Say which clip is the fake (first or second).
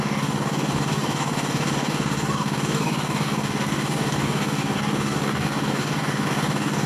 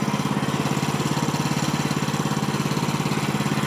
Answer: first